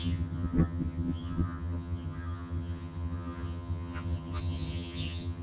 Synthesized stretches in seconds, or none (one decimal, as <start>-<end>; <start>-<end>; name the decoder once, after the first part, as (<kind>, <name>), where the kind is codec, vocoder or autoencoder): 0.0-5.4 (vocoder, HiFi-GAN)